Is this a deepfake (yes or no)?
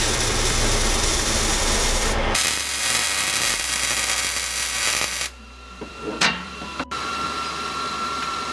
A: yes